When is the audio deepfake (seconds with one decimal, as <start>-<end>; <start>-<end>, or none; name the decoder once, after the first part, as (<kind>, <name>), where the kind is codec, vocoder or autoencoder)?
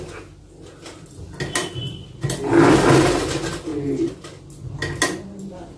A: none